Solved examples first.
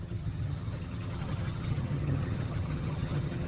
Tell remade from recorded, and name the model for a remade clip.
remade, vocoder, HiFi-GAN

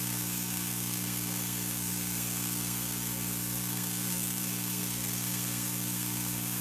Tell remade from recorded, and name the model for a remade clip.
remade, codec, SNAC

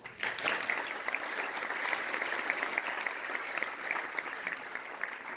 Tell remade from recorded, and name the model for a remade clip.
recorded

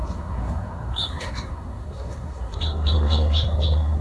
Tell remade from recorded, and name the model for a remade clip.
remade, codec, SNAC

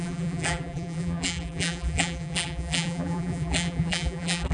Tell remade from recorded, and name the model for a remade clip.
remade, vocoder, BigVGAN v2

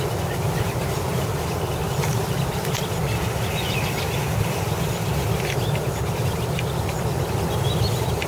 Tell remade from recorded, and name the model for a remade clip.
recorded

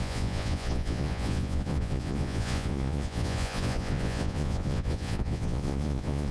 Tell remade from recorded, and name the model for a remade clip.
remade, vocoder, Vocos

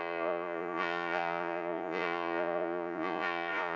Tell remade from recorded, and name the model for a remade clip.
remade, vocoder, Vocos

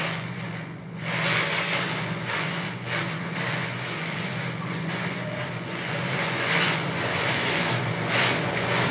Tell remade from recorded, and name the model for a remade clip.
remade, vocoder, Vocos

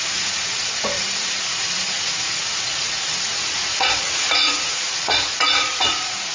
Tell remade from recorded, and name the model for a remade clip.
remade, vocoder, Vocos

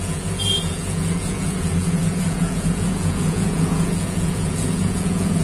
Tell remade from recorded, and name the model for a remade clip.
remade, vocoder, Vocos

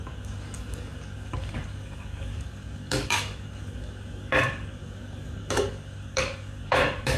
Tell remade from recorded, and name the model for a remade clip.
remade, codec, DAC